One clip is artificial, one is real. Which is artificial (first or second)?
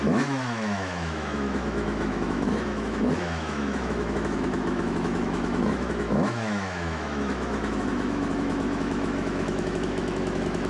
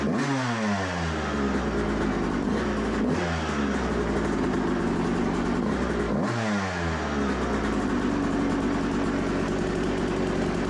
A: first